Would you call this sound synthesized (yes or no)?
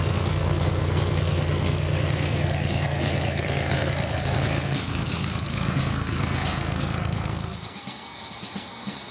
yes